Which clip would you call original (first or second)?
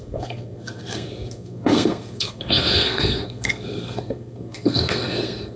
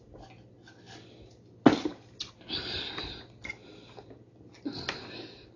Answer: second